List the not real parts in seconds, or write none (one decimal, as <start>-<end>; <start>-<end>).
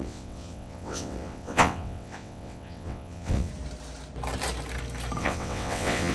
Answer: 0.0-3.5; 5.2-6.1